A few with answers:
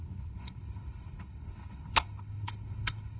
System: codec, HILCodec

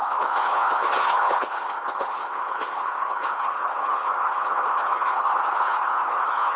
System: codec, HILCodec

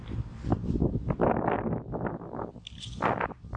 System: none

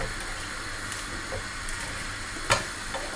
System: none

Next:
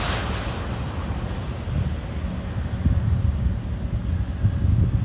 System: none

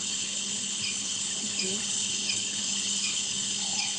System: codec, HILCodec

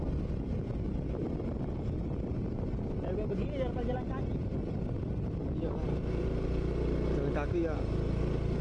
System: none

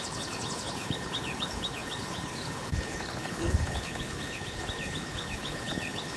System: codec, HILCodec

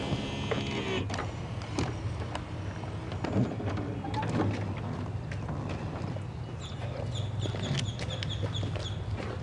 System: none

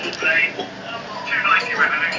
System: none